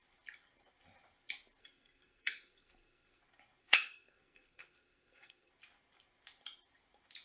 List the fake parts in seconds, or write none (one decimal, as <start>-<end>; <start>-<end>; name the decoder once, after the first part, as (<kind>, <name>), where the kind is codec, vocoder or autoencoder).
1.6-3.2 (codec, SNAC); 3.6-5.5